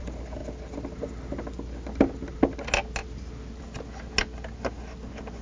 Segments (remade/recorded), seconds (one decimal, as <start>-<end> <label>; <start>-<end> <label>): 0.0-5.4 recorded

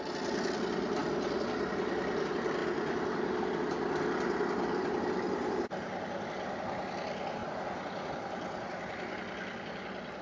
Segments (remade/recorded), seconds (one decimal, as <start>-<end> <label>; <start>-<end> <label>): 0.0-10.2 recorded

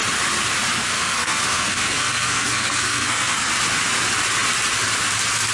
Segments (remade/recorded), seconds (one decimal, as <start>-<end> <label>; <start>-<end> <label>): 0.0-0.8 recorded; 0.8-3.5 remade; 3.5-5.5 recorded

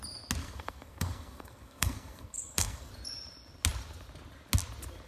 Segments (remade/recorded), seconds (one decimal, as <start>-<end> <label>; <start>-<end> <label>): 0.0-0.4 recorded; 0.4-2.9 remade; 2.9-5.1 recorded